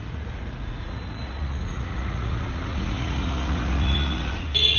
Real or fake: fake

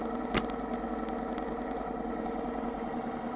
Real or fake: real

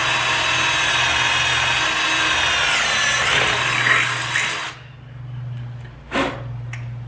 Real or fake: real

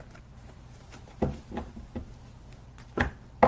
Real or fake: real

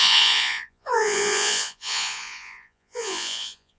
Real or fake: fake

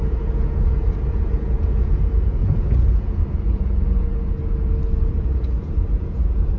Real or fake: fake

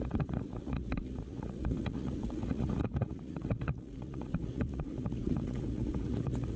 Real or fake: fake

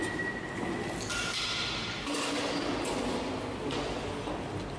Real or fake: real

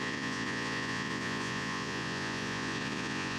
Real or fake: fake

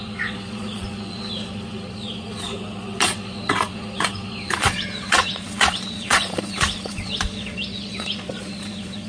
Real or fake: fake